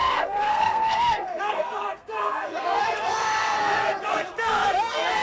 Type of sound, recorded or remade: remade